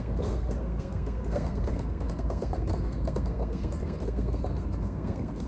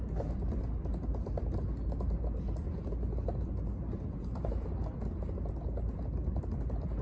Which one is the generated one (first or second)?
first